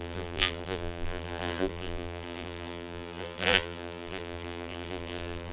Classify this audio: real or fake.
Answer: fake